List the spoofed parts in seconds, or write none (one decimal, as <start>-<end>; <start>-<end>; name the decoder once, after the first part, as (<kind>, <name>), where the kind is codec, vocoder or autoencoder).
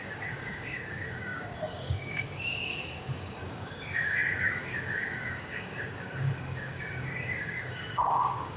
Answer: 0.0-8.6 (codec, DAC)